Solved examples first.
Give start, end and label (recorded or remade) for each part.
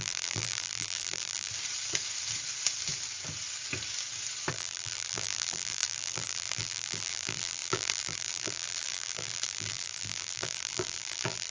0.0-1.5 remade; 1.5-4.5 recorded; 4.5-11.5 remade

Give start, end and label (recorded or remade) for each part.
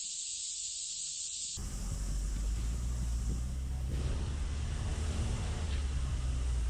0.0-0.5 remade; 0.5-4.9 recorded; 4.9-5.7 remade; 5.7-6.7 recorded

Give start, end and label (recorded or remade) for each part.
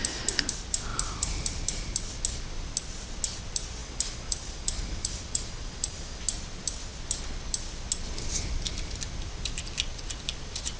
0.0-3.8 recorded; 3.8-6.2 remade; 6.2-10.8 recorded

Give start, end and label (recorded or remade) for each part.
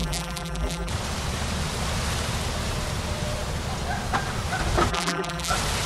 0.0-0.9 remade; 0.9-4.9 recorded; 4.9-5.5 remade; 5.5-5.9 recorded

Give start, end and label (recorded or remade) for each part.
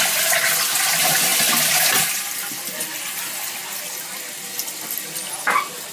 0.0-5.9 recorded